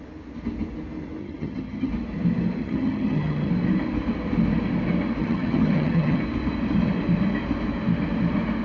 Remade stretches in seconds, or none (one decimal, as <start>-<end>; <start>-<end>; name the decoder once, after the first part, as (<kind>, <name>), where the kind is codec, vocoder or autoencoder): 1.2-1.9 (vocoder, HiFi-GAN); 2.6-3.5; 5.2-6.2